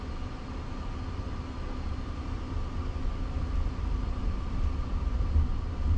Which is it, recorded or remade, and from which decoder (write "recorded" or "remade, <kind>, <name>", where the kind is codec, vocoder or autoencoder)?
recorded